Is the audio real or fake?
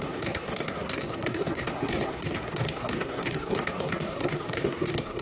fake